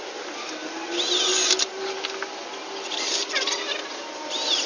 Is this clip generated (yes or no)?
no